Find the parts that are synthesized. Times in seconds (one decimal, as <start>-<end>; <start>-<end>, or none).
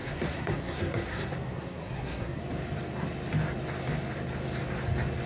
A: 0.0-2.4